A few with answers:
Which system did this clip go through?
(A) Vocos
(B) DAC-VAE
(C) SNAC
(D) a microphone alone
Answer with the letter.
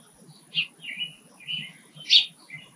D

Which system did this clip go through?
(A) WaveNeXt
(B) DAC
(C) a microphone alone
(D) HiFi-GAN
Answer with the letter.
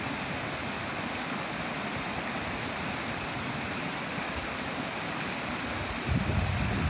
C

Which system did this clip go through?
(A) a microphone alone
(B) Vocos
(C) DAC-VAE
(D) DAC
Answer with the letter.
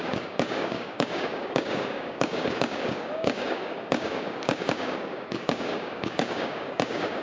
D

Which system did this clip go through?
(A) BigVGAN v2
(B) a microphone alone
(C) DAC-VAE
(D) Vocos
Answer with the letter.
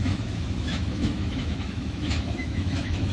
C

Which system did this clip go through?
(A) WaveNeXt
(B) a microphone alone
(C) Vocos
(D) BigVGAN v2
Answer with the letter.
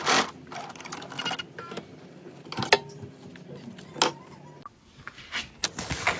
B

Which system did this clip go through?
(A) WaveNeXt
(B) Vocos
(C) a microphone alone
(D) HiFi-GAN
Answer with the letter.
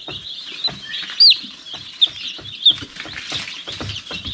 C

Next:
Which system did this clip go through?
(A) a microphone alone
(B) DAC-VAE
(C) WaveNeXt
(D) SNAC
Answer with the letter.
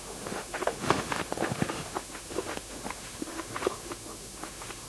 B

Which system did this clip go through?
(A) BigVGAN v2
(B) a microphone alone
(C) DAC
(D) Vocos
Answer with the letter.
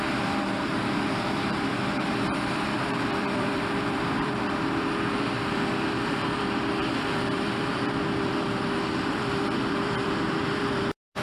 A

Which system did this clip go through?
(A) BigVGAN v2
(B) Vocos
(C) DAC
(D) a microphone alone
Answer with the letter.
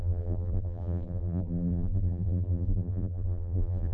A